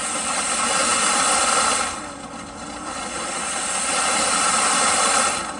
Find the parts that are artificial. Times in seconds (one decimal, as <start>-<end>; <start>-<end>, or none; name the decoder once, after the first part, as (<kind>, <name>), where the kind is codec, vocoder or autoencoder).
none